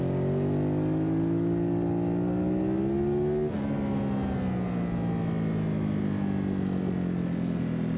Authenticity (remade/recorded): recorded